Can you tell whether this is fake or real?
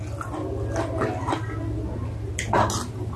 real